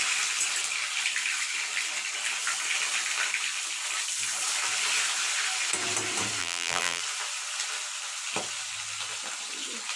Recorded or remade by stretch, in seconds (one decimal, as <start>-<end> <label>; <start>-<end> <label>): 0.0-6.4 recorded; 6.4-7.0 remade; 7.0-10.0 recorded

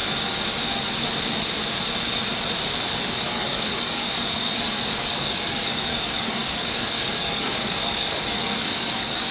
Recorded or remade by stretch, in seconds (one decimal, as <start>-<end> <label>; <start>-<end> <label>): 0.0-3.0 recorded; 3.0-9.3 remade